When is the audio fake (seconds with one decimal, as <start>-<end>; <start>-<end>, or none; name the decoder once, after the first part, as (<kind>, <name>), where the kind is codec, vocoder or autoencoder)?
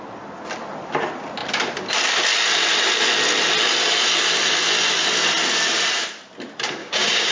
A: 6.8-7.3 (codec, DAC)